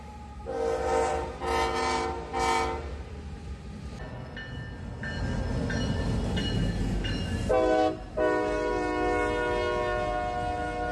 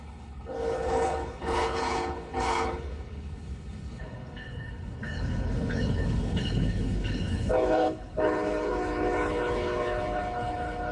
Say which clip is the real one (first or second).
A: first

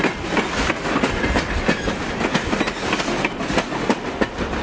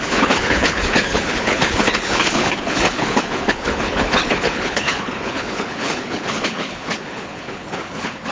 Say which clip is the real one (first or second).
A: first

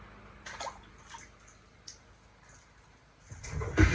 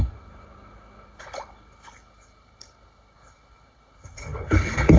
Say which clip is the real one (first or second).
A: first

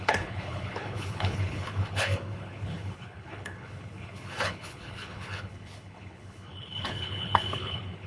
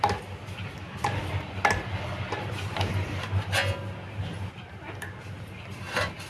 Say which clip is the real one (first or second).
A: second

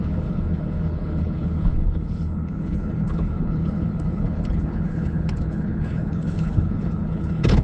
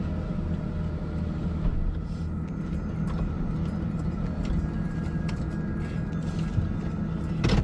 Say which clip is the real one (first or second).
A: second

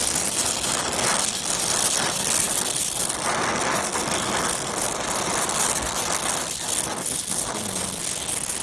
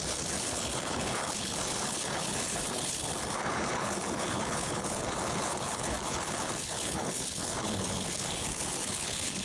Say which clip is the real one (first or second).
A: first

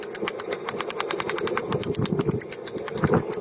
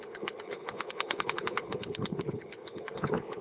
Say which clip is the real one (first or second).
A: first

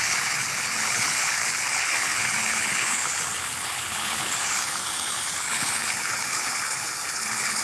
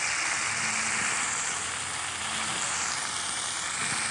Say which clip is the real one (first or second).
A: second